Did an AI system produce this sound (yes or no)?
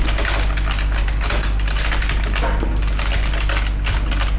no